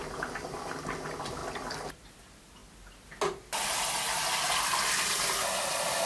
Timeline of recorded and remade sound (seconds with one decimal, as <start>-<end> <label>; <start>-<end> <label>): 0.0-6.1 recorded